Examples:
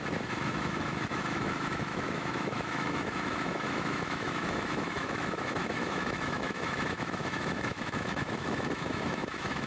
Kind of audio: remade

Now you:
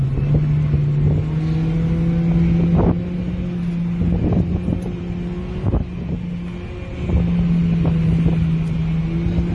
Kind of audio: recorded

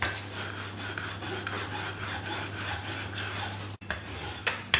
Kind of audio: recorded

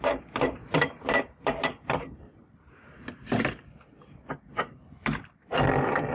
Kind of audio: remade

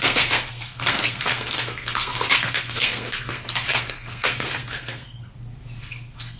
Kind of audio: remade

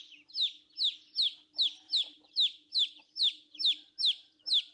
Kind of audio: recorded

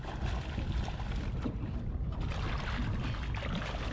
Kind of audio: recorded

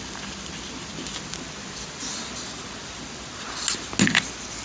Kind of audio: recorded